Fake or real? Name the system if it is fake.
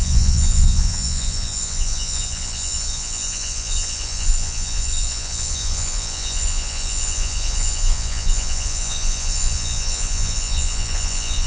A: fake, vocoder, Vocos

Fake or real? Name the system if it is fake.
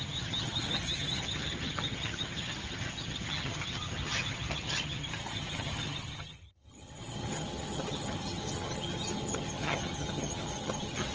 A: fake, vocoder, HiFi-GAN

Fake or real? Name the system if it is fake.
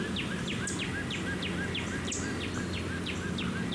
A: real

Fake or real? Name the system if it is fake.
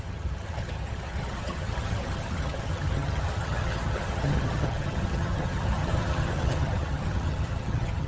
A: fake, vocoder, HiFi-GAN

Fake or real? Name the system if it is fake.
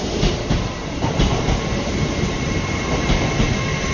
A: fake, vocoder, BigVGAN v2